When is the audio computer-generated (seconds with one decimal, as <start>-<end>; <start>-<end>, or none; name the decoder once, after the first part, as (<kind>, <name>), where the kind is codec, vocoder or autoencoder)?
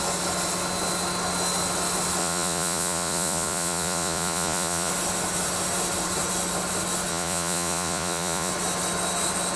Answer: 2.2-4.9 (vocoder, Vocos); 7.1-8.5